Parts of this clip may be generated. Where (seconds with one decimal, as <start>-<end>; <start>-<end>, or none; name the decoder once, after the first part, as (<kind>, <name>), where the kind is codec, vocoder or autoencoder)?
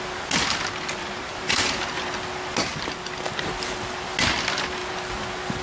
1.0-1.7 (vocoder, BigVGAN v2)